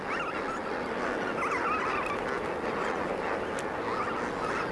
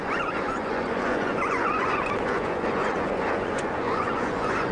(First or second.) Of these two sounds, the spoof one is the second